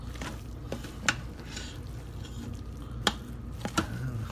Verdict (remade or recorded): recorded